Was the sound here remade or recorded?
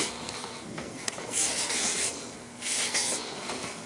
remade